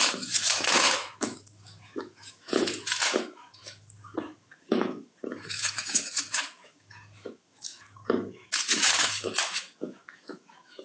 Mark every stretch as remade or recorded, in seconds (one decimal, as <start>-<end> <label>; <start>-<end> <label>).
0.0-10.8 remade